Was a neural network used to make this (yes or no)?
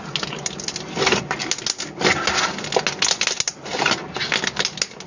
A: no